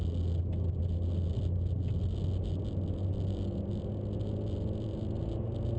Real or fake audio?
real